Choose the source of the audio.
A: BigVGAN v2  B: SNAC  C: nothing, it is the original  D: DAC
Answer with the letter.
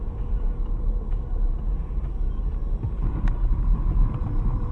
C